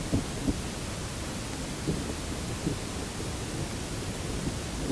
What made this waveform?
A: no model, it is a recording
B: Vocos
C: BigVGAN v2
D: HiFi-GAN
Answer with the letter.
A